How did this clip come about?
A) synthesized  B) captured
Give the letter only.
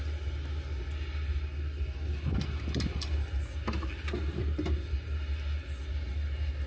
B